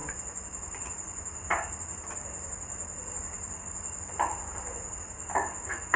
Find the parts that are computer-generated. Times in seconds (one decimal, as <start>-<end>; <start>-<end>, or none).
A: none